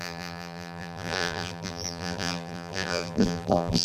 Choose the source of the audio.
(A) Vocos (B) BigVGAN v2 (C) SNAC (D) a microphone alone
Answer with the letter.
B